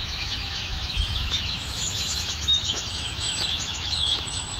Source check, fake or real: fake